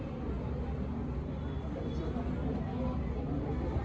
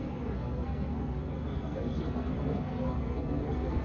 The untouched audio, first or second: first